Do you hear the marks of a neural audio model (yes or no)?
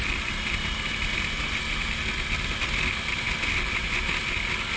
no